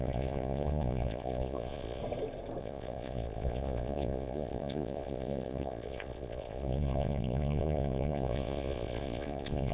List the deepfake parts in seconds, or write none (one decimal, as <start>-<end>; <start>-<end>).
0.0-2.0; 2.6-9.7